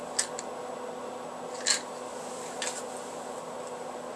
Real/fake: real